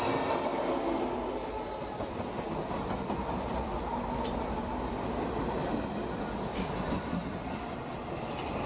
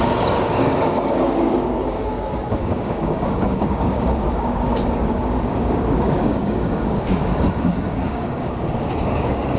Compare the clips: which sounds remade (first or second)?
second